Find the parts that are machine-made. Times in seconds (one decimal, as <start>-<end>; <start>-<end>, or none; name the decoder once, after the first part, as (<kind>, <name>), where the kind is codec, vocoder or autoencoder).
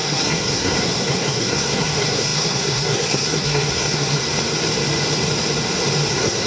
0.0-4.2 (codec, SNAC); 6.1-6.5